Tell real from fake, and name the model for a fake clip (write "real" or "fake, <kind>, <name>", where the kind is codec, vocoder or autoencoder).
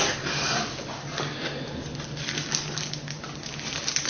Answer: real